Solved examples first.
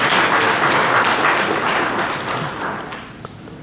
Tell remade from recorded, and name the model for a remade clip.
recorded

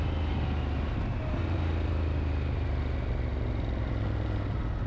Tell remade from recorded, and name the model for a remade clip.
recorded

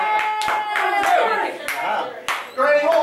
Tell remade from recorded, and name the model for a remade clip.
recorded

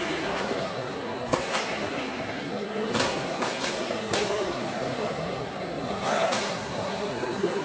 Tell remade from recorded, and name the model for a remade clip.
remade, codec, SNAC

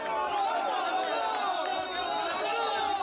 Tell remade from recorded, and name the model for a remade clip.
recorded